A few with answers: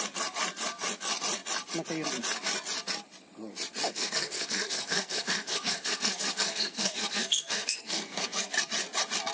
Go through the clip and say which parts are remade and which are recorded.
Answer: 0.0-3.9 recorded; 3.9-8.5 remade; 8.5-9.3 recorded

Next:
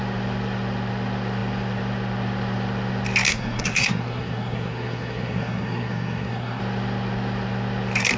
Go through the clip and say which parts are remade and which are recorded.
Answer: 0.0-3.3 recorded; 3.3-6.6 remade; 6.6-8.2 recorded

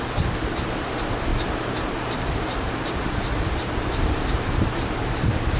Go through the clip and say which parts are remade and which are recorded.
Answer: 0.0-1.3 recorded; 1.3-4.6 remade; 4.6-5.6 recorded

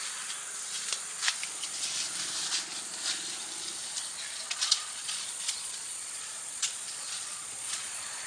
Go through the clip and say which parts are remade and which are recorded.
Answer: 0.0-4.1 recorded; 4.1-8.3 remade

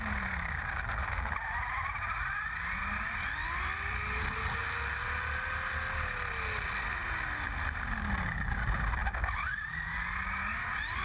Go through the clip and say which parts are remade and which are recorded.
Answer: 0.0-11.0 recorded

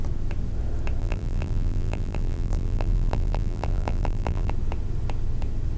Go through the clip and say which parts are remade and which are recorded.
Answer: 0.0-1.0 recorded; 1.0-4.5 remade; 4.5-5.8 recorded